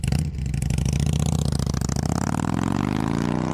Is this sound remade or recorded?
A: recorded